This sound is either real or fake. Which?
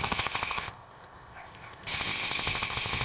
fake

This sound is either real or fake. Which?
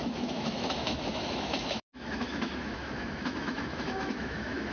fake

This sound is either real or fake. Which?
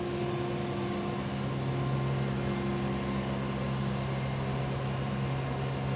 real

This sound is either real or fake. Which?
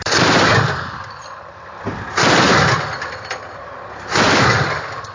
fake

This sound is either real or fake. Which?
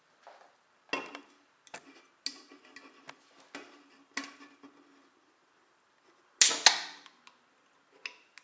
real